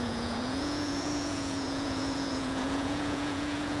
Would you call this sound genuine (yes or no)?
no